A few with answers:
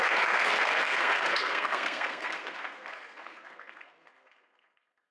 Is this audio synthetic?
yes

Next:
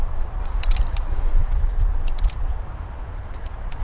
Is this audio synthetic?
yes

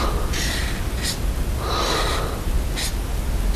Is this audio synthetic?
no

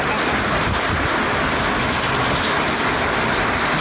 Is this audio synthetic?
no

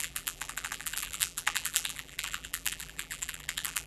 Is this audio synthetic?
yes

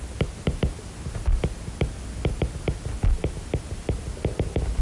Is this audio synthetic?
no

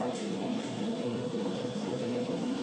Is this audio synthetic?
yes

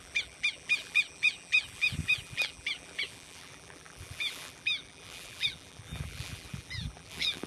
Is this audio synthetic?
yes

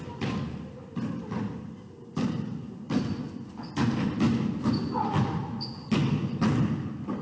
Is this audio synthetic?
no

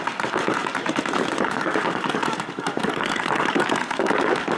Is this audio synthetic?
yes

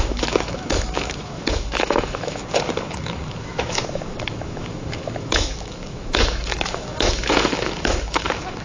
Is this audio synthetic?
yes